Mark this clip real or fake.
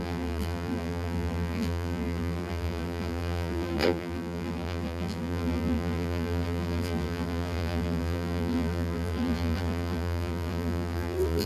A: fake